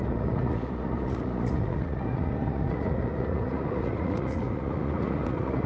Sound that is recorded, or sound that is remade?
remade